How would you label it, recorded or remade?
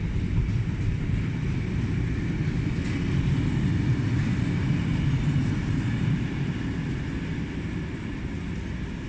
recorded